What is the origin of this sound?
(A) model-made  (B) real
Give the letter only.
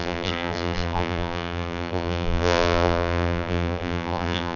A